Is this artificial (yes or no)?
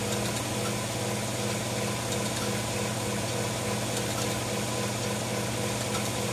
no